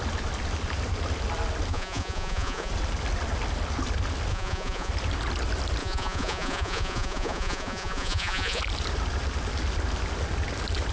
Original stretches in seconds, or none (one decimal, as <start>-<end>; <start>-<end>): 0.0-1.7; 2.7-4.3; 4.9-5.8; 8.6-10.9